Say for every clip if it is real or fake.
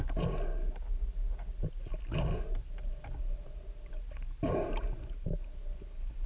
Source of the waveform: real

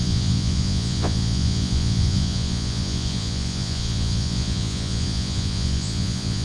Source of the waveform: fake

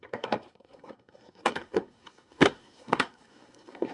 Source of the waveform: fake